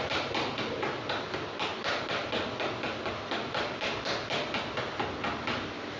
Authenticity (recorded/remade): recorded